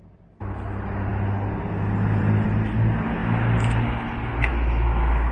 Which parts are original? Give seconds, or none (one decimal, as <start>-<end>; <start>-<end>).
0.0-5.3